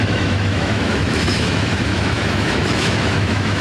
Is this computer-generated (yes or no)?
yes